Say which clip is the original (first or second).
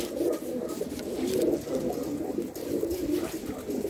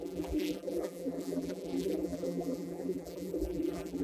first